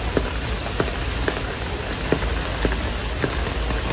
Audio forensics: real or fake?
real